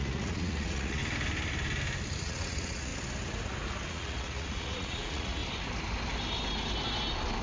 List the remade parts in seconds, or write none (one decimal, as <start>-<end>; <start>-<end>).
0.0-1.0; 2.2-2.9; 3.9-5.4